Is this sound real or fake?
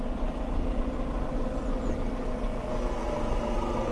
real